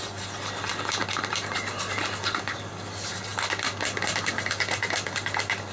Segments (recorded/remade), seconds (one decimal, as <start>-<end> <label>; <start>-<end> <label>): 0.0-5.7 recorded